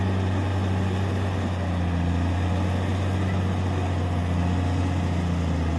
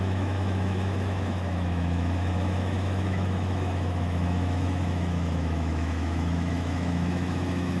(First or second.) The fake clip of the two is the second